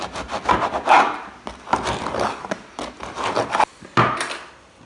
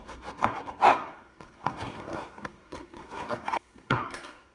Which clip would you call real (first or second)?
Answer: first